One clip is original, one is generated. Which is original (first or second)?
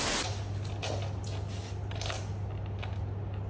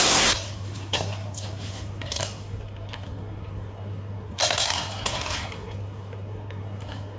first